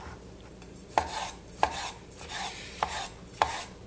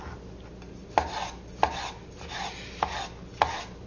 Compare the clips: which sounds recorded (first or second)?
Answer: second